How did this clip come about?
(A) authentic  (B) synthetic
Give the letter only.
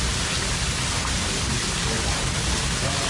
A